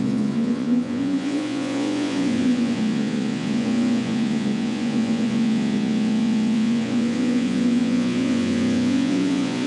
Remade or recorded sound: remade